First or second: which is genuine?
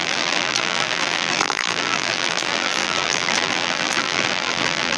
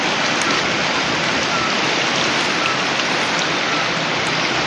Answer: second